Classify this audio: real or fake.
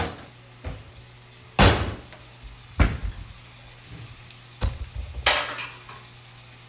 real